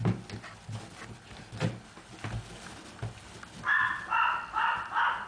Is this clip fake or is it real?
real